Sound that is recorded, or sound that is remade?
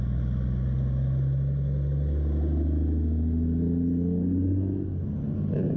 recorded